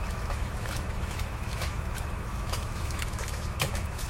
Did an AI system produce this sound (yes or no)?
yes